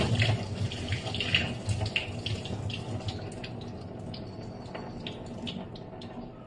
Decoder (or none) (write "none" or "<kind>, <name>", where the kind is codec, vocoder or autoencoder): none